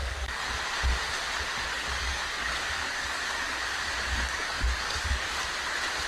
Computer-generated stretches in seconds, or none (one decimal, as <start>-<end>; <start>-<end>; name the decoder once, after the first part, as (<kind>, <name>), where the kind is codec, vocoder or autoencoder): 0.0-0.5 (codec, DAC); 1.7-5.4